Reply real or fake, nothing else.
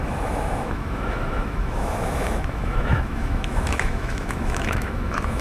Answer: fake